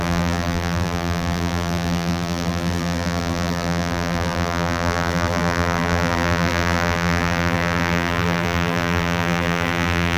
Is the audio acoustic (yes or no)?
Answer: no